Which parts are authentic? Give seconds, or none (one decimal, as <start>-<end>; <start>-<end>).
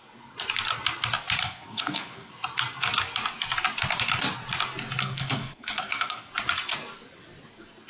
0.0-1.4; 2.3-5.0; 6.3-7.9